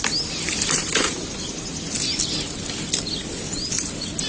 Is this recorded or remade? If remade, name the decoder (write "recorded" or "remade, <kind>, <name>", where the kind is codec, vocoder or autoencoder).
recorded